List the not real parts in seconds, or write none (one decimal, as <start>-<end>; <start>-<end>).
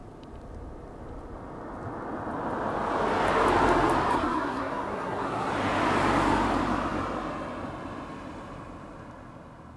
4.1-5.5